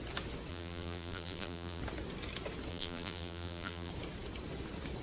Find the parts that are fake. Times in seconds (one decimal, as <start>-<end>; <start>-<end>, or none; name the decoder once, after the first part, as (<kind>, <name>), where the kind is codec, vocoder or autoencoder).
0.5-1.8 (vocoder, BigVGAN v2); 2.7-3.9